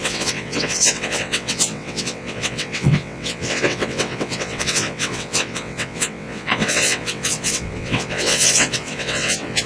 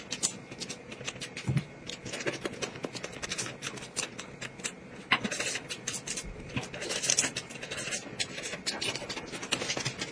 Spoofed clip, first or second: first